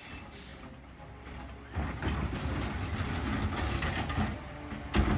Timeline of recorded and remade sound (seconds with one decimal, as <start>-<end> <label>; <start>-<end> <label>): 0.0-5.2 recorded